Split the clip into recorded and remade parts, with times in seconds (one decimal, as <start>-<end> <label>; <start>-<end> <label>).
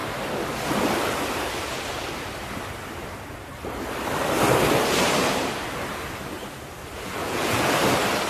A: 0.0-7.2 recorded; 7.2-7.7 remade; 7.7-8.3 recorded